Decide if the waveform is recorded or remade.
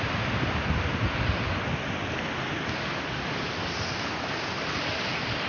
recorded